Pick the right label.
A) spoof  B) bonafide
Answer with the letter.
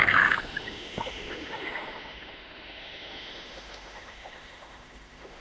A